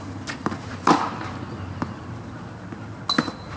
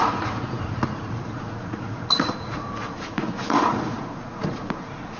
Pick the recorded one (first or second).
first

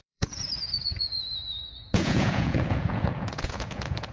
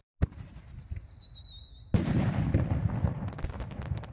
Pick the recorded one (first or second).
second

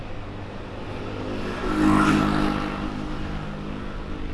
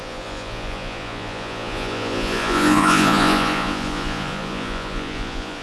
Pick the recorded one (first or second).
first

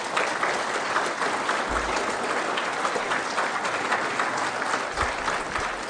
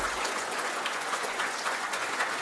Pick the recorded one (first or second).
first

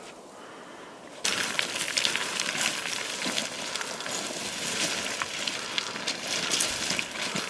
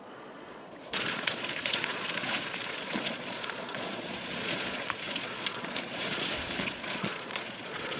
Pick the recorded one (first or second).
first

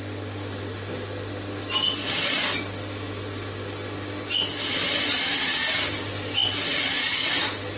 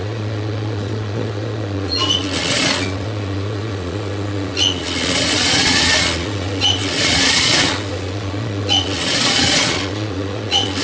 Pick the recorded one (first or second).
first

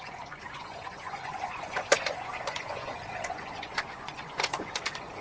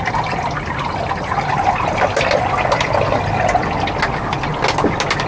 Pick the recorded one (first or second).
second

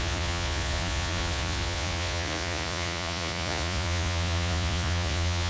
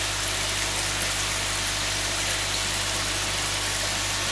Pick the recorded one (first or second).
second